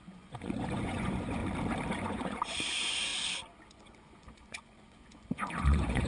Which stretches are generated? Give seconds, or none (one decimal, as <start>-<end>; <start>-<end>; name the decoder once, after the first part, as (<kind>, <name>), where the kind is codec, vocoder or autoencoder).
0.0-1.4 (vocoder, Vocos); 1.9-3.1; 3.7-6.1